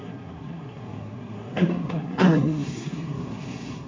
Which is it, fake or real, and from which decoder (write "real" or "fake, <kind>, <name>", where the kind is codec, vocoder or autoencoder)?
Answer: fake, codec, SNAC